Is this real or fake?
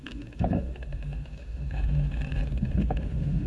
fake